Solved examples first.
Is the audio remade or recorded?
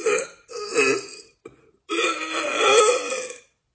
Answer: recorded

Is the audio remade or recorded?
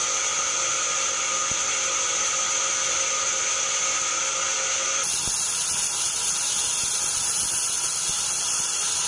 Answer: recorded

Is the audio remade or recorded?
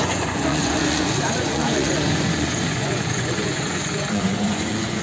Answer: remade